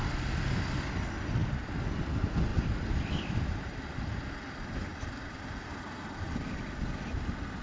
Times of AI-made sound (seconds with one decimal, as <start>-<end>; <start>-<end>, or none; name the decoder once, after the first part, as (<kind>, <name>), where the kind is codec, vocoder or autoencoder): none